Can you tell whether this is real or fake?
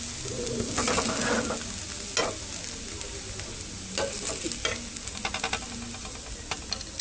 real